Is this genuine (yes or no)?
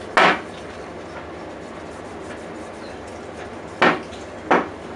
yes